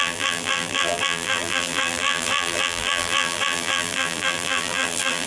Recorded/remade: remade